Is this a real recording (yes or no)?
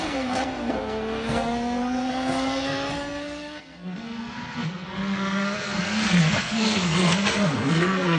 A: no